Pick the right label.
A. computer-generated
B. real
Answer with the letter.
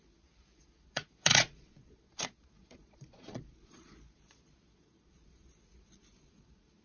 A